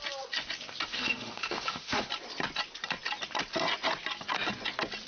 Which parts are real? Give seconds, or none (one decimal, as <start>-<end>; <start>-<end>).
0.0-0.9; 2.1-5.1